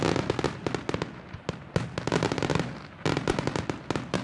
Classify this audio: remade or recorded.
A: recorded